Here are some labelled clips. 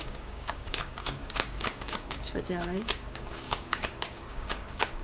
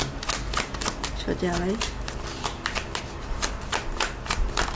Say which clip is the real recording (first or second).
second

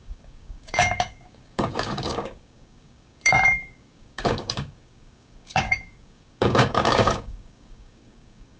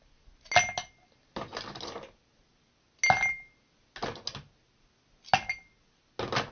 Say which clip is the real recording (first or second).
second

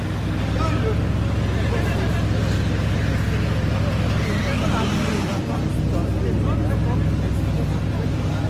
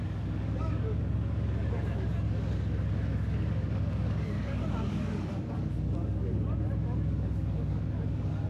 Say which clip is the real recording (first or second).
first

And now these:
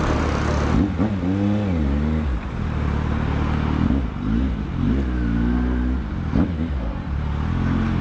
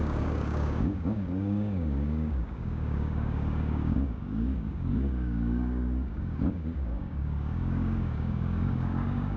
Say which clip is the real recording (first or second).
first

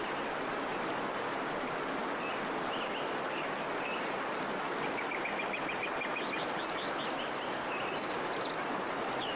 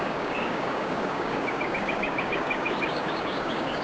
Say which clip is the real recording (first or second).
first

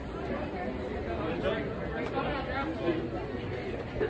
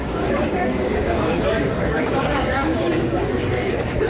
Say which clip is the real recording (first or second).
first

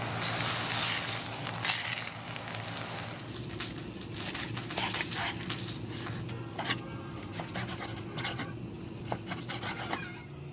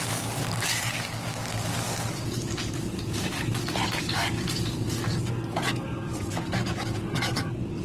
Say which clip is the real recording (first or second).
first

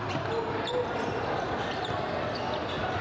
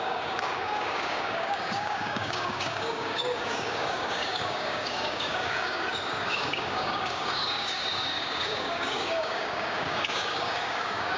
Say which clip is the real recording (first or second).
first